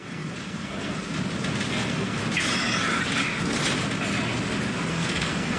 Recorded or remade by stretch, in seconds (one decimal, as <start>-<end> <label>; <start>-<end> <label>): 0.0-1.1 remade; 1.1-1.7 recorded; 1.7-2.2 remade; 2.2-4.9 recorded; 4.9-5.6 remade